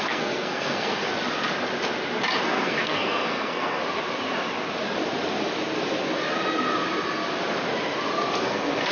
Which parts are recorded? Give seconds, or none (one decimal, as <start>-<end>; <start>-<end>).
1.0-2.4; 3.8-8.4